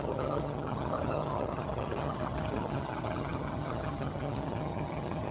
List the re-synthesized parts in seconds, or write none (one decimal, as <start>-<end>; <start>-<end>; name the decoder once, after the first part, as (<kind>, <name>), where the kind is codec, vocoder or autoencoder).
0.0-5.3 (vocoder, HiFi-GAN)